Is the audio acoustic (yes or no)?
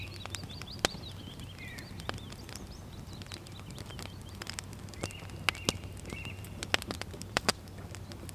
yes